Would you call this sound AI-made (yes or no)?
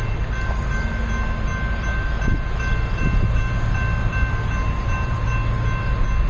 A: no